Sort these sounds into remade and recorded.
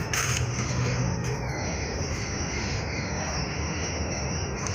remade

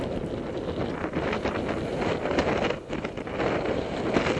recorded